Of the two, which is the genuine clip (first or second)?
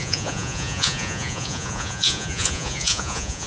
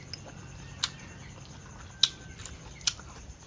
second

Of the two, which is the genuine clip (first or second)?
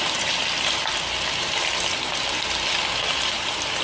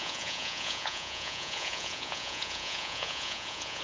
first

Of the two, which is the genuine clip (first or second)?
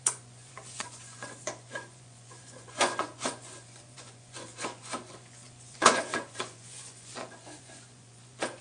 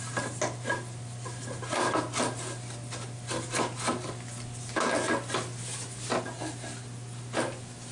second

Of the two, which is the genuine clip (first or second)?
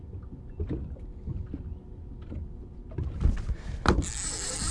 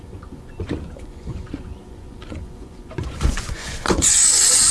first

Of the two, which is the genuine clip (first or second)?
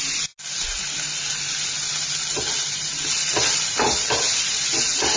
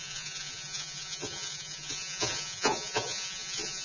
first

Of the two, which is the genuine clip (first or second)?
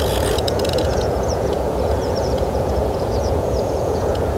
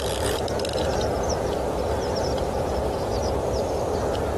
second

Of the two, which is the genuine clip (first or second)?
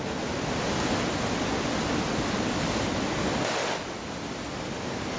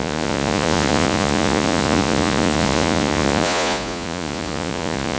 first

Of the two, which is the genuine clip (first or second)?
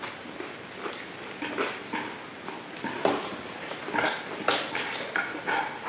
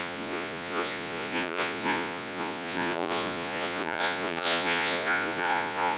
first